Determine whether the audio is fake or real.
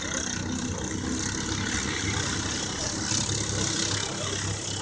real